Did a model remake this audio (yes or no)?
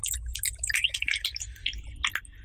no